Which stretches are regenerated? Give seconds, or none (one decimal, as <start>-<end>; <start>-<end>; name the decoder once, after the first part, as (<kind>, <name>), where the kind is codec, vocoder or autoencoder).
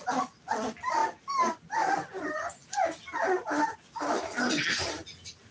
none